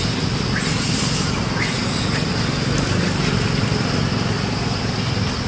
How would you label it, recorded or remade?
recorded